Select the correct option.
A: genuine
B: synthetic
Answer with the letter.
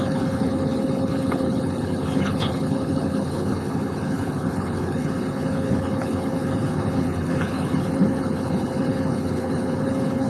B